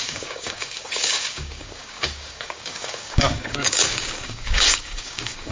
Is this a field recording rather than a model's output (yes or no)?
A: no